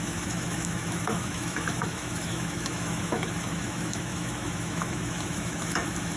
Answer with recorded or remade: remade